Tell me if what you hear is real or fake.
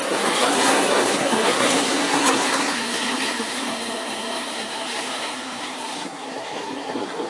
fake